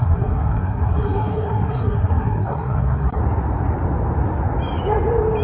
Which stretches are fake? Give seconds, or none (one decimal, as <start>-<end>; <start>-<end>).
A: 0.0-3.2